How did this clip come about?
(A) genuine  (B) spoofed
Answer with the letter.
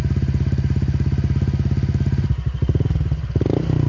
A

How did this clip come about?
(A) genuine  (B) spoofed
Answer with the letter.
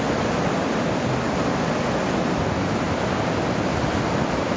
A